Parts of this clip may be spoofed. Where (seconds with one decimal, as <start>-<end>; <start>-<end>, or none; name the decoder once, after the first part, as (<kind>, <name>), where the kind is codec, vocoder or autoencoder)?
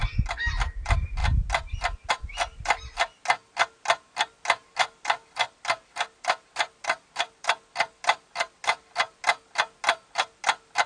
none